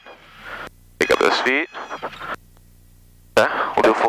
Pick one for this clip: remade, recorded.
recorded